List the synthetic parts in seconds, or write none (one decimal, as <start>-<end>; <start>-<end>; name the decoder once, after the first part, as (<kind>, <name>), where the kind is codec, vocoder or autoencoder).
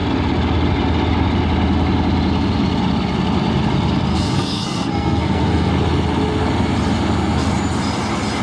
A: 4.1-5.7 (codec, SNAC)